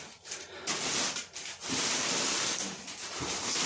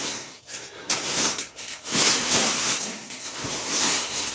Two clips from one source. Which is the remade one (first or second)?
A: second